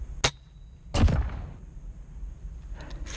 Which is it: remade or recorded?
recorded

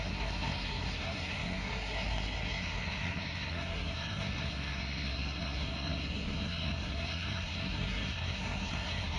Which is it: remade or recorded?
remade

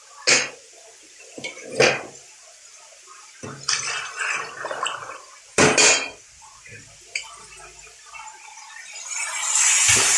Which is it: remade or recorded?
recorded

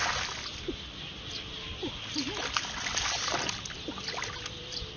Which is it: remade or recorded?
recorded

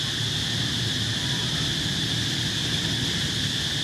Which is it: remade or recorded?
recorded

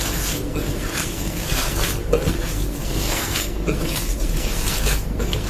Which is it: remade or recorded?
remade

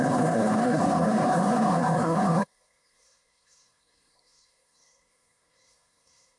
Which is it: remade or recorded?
remade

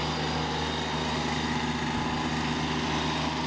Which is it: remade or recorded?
recorded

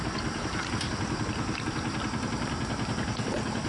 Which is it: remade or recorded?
recorded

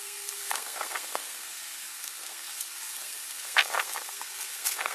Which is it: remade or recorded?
remade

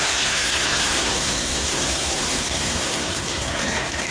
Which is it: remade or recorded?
remade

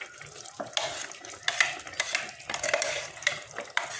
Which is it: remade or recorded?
recorded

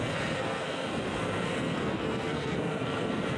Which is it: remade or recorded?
remade